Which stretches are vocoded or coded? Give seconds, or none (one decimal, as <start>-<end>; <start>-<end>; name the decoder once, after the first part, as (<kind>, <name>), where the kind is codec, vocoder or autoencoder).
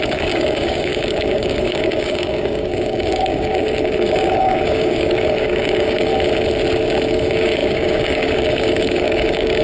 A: 0.0-6.1 (codec, DAC); 7.1-9.6